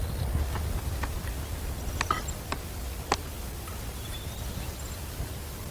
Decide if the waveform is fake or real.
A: real